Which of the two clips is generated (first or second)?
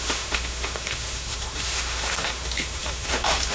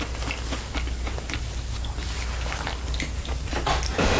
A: first